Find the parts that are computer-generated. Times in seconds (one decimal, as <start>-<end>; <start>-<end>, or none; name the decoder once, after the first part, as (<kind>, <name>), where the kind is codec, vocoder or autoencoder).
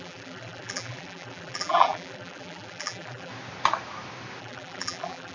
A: 0.0-3.3 (vocoder, BigVGAN v2); 4.4-5.3